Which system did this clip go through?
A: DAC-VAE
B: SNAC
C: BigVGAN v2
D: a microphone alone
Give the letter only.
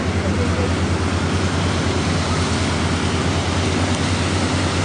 D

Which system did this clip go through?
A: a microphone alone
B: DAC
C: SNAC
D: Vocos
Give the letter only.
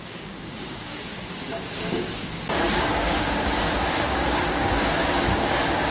B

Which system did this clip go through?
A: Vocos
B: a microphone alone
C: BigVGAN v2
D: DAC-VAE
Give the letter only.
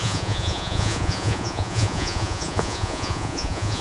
A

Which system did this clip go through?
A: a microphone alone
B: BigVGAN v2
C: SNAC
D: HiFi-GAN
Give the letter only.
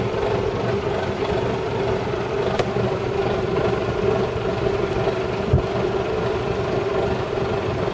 A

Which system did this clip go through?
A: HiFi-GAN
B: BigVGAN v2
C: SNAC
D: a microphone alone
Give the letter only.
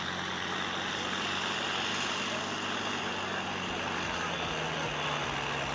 D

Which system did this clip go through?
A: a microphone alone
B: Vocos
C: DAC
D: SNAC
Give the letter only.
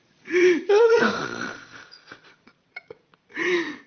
B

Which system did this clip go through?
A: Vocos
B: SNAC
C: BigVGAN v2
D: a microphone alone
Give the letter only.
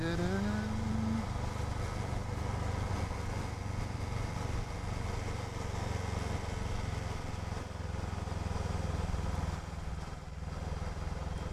D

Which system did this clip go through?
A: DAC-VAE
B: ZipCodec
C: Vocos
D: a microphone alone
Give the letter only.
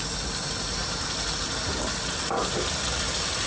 D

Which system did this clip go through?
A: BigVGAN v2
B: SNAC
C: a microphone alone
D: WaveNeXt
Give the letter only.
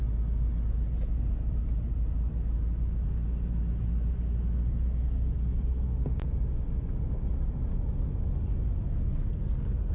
C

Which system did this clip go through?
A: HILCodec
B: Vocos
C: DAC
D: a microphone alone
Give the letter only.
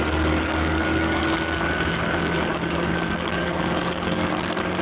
C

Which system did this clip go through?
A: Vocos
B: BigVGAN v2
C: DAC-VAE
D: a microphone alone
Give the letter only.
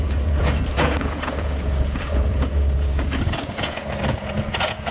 A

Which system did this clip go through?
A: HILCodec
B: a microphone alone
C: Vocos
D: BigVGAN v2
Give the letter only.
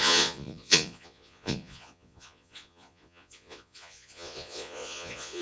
C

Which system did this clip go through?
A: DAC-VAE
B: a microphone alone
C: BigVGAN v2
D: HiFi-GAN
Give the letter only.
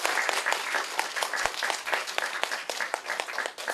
B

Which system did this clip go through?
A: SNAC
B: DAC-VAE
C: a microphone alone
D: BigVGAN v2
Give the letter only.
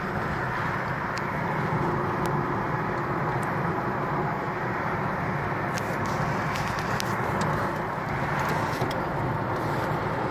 C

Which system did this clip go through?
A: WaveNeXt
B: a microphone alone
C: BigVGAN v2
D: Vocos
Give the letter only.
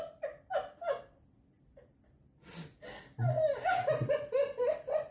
B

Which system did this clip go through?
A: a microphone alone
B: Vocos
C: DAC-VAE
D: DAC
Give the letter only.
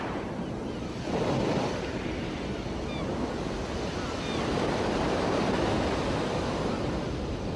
A